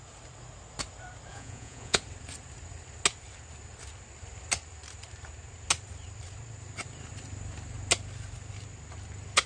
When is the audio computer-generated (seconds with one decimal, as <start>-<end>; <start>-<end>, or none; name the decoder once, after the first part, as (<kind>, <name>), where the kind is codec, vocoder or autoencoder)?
1.3-2.0 (vocoder, Vocos)